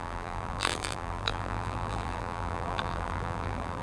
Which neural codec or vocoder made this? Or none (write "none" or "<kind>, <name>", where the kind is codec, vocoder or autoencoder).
vocoder, BigVGAN v2